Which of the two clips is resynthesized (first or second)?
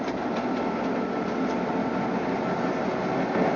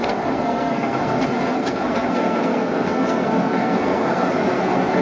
second